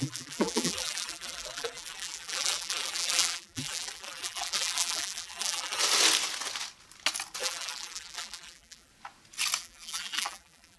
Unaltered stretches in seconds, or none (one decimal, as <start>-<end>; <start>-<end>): 5.8-7.4; 8.9-9.6